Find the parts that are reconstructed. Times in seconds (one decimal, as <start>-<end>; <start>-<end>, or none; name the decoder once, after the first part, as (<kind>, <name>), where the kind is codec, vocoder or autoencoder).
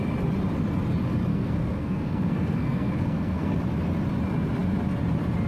1.3-3.6 (codec, SNAC)